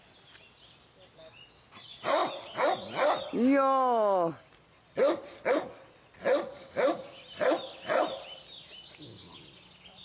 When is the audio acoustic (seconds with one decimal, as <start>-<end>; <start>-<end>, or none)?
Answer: 0.0-6.6; 7.2-10.0